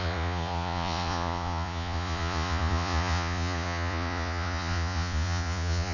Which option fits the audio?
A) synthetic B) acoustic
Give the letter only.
A